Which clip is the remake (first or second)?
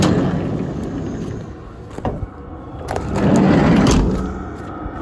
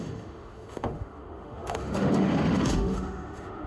second